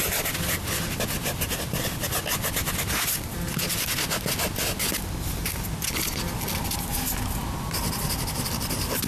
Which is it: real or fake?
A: real